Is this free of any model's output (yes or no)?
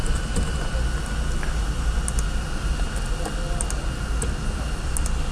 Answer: yes